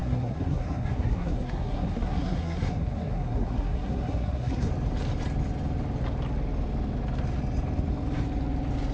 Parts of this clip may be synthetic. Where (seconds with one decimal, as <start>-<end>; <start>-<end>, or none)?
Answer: 0.0-4.7